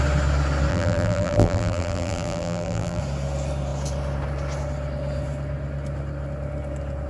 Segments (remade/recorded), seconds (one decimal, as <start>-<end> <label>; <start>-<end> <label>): 0.0-0.7 recorded; 0.7-3.0 remade; 3.0-7.1 recorded